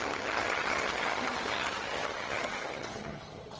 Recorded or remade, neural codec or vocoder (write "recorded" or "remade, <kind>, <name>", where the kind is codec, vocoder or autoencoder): remade, vocoder, HiFi-GAN